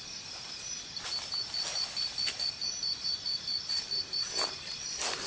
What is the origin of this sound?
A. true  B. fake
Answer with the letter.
A